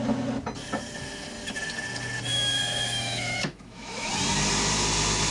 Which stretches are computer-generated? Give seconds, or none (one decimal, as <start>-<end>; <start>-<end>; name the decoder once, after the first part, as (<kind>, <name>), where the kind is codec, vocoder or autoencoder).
2.3-4.1 (autoencoder, DAC-VAE)